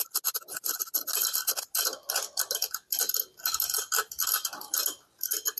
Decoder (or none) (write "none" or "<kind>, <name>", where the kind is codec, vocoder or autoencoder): none